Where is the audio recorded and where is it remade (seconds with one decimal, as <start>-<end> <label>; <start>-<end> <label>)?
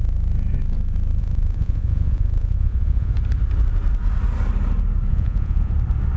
0.0-1.2 recorded; 1.2-3.1 remade; 3.1-5.1 recorded; 5.1-5.7 remade; 5.7-6.2 recorded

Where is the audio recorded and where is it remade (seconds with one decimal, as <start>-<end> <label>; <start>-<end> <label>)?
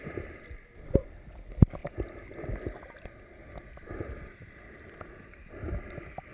0.0-1.8 remade; 1.8-5.2 recorded; 5.2-6.3 remade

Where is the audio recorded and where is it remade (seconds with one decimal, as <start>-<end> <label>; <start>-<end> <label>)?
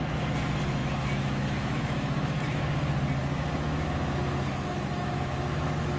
0.0-0.8 recorded; 0.8-2.6 remade; 2.6-3.2 recorded; 3.2-6.0 remade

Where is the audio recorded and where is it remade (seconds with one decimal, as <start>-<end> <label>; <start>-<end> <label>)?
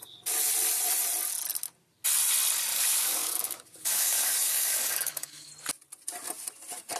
0.0-2.7 recorded; 2.7-5.5 remade; 5.5-7.0 recorded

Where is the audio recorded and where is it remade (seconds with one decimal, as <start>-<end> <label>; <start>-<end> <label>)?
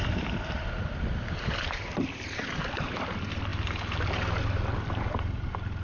0.0-3.5 remade; 3.5-4.4 recorded; 4.4-5.8 remade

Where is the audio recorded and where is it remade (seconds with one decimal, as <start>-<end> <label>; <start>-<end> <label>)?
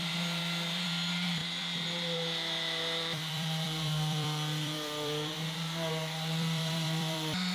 0.0-7.5 remade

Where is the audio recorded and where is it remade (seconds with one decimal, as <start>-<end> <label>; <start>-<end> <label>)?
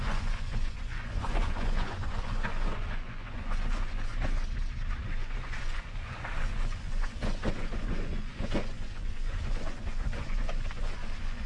0.0-4.1 remade; 4.1-5.0 recorded; 5.0-11.5 remade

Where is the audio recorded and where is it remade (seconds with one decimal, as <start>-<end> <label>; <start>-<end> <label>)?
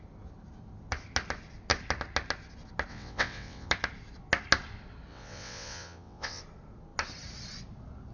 0.0-2.9 recorded; 2.9-3.7 remade; 3.7-5.1 recorded; 5.1-6.4 remade; 6.4-8.1 recorded